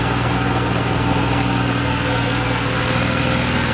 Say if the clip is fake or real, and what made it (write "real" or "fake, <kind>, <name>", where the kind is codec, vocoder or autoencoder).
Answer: fake, codec, SNAC